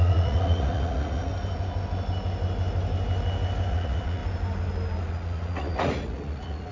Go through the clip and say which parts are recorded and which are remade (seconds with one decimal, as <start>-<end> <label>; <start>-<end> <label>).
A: 0.0-1.3 remade; 1.3-3.7 recorded; 3.7-4.2 remade; 4.2-5.1 recorded; 5.1-6.7 remade